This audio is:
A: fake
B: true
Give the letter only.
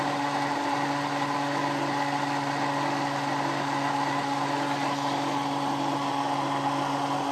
B